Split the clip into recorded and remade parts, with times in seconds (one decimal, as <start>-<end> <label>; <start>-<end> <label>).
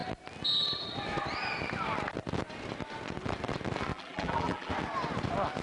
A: 0.0-3.9 recorded; 3.9-4.7 remade; 4.7-5.6 recorded